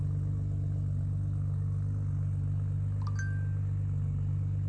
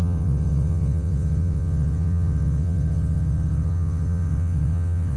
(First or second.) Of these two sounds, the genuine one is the first